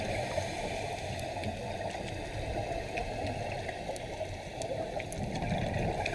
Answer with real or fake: real